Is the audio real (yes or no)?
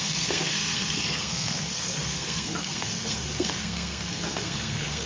no